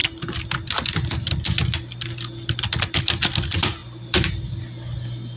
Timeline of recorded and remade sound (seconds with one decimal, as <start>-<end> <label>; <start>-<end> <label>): 0.0-3.8 recorded; 3.8-4.3 remade; 4.3-5.4 recorded